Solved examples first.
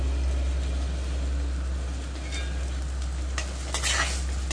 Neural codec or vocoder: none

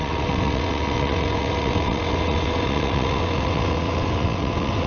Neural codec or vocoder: vocoder, WaveNeXt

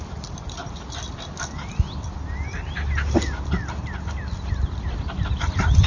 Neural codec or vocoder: none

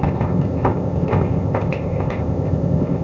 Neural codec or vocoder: codec, ZipCodec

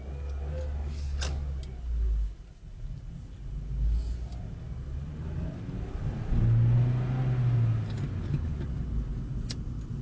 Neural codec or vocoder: none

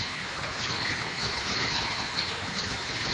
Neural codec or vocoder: codec, HILCodec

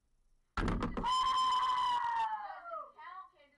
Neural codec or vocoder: none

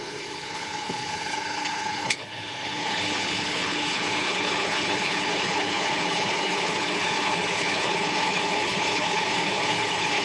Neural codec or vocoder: codec, HILCodec